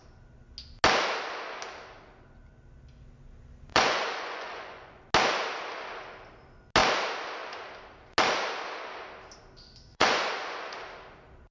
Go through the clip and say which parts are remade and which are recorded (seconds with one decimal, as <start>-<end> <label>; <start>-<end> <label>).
0.0-3.7 recorded; 3.7-5.0 remade; 5.0-9.9 recorded; 9.9-10.7 remade; 10.7-11.5 recorded